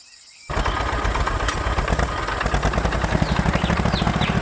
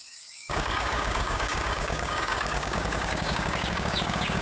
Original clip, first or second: first